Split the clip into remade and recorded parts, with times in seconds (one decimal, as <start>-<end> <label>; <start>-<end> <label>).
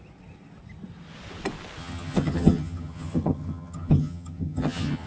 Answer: 0.0-1.8 recorded; 1.8-5.1 remade